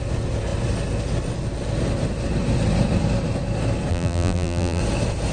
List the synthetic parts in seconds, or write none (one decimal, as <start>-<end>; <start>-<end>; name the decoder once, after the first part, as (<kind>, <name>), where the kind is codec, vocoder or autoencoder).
3.9-4.8 (vocoder, BigVGAN v2)

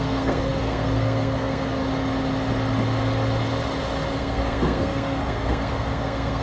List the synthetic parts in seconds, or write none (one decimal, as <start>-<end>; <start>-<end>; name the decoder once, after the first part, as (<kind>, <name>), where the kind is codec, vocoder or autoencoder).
0.0-1.8 (codec, SNAC); 4.2-6.4

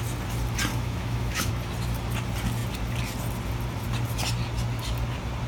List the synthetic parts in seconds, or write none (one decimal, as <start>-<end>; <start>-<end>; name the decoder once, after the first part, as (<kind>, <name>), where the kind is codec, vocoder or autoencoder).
0.7-1.5 (autoencoder, DAC-VAE)

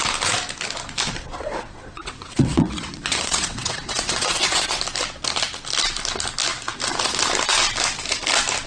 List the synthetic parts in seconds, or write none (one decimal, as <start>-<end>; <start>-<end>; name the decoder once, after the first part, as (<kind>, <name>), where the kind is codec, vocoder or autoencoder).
1.3-4.8 (vocoder, WaveNeXt)

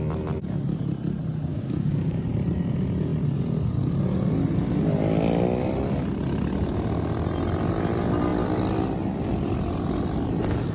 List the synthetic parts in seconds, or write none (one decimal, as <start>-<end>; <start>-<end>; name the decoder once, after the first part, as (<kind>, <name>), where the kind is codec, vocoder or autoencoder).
1.5-2.2 (codec, DAC)

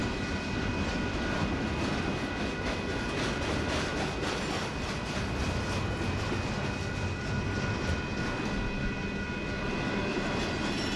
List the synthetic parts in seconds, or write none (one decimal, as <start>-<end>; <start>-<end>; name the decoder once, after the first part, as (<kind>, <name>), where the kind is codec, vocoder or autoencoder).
none